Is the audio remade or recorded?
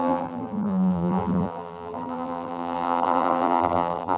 remade